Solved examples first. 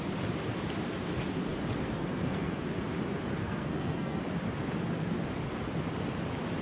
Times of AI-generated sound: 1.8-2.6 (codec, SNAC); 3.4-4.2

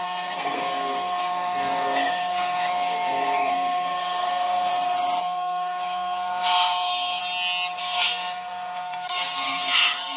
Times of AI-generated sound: 0.0-4.7 (codec, SNAC); 5.2-7.2; 7.8-10.2

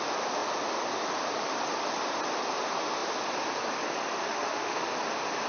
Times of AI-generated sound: 4.2-4.9 (autoencoder, DAC-VAE)

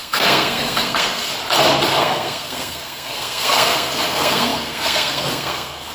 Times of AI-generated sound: 0.0-1.3 (codec, SNAC); 1.9-5.9

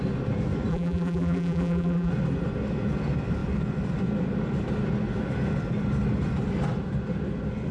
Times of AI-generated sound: 0.7-2.1 (vocoder, BigVGAN v2)

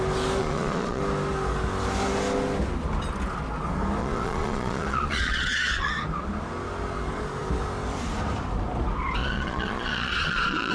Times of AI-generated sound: 0.4-1.0 (vocoder, Vocos); 4.0-5.9; 9.2-10.7

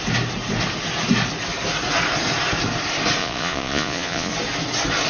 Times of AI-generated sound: 3.2-4.3 (vocoder, Vocos)

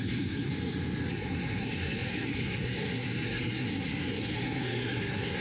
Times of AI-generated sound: 0.0-0.5 (codec, SNAC); 1.1-5.4